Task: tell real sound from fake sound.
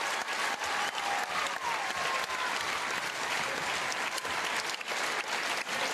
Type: real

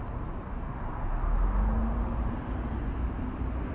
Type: real